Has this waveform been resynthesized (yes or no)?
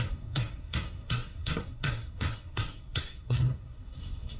yes